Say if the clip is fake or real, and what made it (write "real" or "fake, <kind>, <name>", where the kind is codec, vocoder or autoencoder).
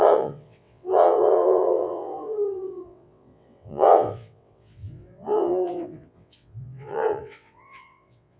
fake, vocoder, WaveNeXt